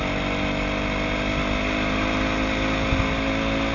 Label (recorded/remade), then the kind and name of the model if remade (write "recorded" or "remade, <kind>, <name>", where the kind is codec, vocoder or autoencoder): recorded